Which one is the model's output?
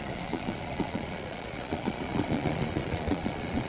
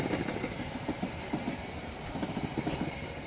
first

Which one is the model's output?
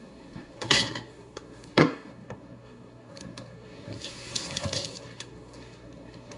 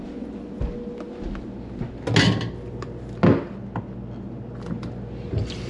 first